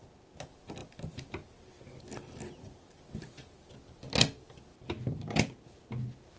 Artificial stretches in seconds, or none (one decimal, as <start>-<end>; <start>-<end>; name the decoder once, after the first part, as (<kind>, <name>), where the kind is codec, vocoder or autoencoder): none